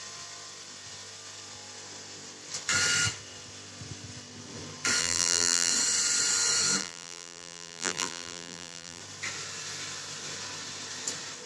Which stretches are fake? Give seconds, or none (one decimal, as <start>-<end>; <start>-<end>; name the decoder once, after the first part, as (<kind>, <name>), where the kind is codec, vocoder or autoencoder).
5.0-5.7 (vocoder, BigVGAN v2); 6.8-9.0